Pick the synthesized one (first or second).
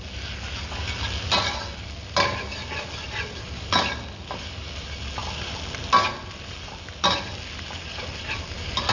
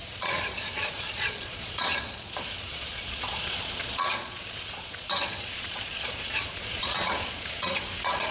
second